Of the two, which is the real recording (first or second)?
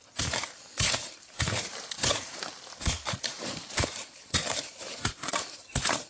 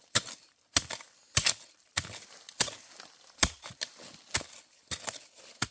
second